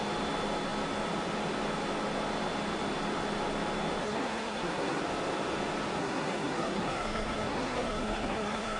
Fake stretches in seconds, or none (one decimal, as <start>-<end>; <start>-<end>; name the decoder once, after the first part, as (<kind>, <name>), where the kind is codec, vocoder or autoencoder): 4.0-5.0 (codec, SNAC); 6.0-8.8